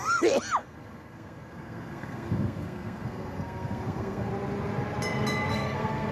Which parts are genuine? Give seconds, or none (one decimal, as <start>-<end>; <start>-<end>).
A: 0.0-0.6; 4.3-5.5